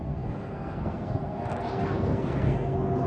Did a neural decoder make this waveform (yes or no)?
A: yes